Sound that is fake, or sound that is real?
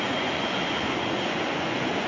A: fake